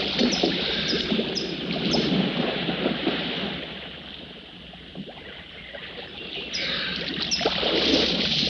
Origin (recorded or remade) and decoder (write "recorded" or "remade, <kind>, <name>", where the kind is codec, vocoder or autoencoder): recorded